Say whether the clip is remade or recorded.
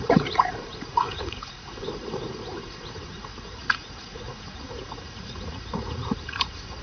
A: remade